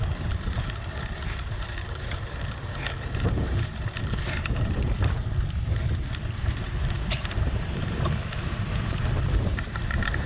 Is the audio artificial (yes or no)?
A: yes